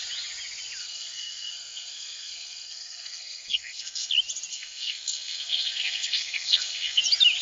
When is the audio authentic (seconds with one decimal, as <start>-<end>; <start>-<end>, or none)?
0.0-0.8; 4.1-4.5; 7.0-7.4